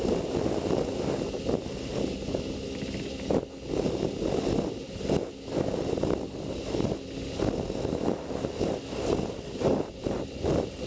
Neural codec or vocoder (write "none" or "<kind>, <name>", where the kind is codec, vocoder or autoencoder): none